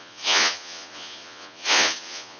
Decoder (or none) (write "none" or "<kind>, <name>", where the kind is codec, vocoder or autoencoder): vocoder, Vocos